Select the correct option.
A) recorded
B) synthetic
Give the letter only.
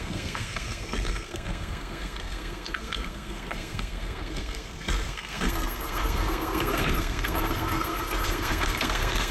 B